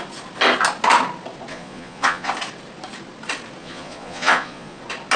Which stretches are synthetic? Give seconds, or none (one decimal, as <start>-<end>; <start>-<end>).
1.5-2.3; 3.6-4.8